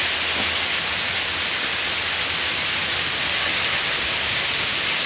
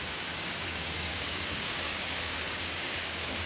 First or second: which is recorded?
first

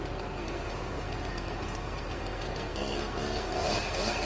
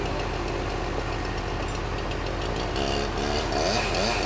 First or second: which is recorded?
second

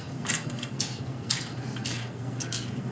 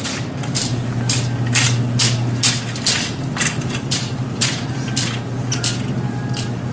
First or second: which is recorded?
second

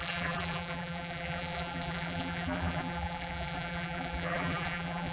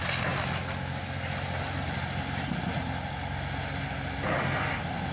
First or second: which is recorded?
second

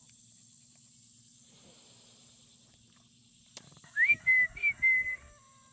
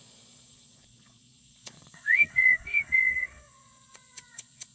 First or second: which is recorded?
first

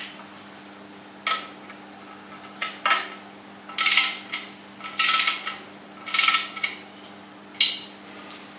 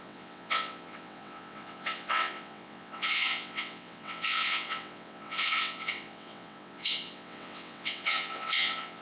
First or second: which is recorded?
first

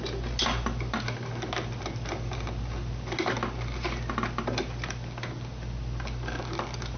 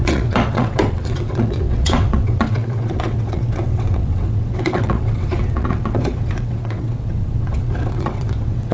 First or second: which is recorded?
first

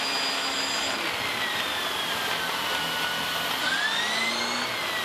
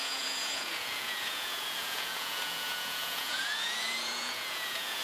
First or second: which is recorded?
first